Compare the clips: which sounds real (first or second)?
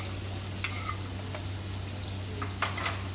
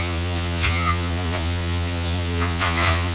first